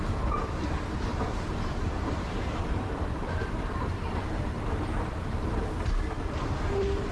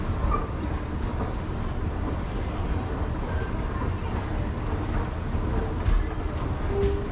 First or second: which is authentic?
second